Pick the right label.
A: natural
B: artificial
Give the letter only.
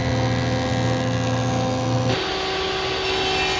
A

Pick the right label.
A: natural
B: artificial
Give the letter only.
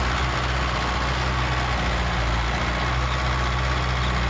A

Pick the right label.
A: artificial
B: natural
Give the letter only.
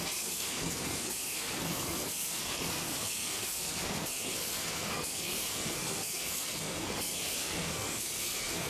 A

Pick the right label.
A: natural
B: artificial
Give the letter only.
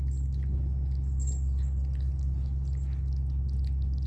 A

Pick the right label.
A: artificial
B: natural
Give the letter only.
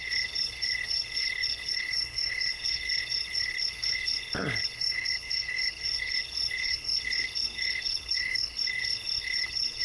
A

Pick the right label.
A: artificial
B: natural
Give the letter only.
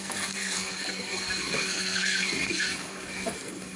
A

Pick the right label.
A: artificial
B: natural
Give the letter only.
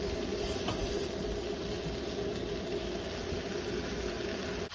B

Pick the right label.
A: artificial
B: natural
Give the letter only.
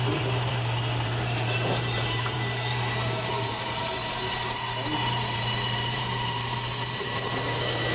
A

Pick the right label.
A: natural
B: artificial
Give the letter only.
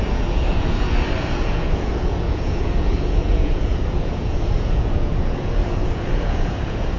B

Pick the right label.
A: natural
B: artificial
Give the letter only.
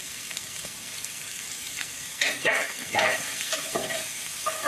B